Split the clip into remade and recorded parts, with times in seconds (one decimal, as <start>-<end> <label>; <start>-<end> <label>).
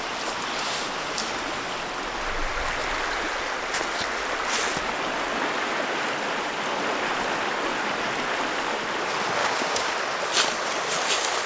0.0-9.4 recorded; 9.4-9.9 remade; 9.9-11.5 recorded